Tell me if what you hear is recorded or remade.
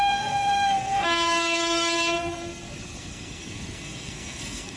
remade